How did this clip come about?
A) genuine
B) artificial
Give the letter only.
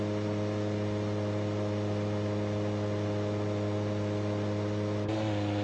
A